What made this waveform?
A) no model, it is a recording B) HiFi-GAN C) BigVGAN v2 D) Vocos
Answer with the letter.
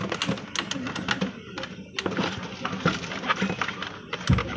A